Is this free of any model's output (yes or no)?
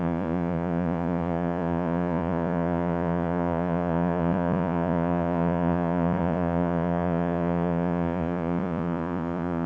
no